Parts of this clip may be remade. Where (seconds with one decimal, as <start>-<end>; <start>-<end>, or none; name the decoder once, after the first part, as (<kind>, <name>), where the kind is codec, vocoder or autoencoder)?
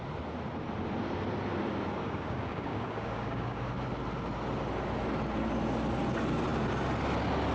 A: 2.0-3.6 (codec, DAC)